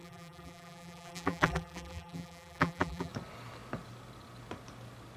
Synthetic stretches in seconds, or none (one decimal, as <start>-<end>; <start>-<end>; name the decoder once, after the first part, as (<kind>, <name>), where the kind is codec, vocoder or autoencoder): 0.0-3.1 (vocoder, BigVGAN v2)